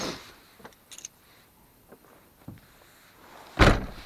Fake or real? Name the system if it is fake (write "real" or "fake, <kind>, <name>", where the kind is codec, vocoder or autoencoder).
real